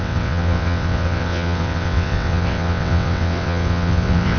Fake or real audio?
fake